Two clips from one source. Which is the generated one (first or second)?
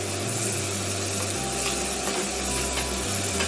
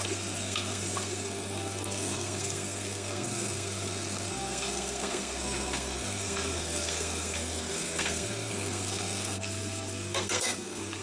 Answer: second